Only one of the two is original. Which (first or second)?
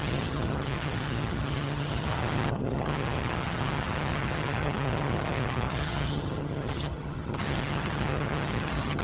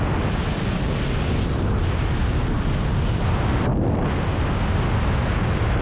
second